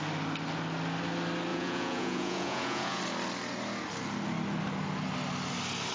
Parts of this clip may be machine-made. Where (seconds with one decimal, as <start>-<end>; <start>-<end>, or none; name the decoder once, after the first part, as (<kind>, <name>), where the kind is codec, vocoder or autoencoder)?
1.5-3.0 (vocoder, Vocos)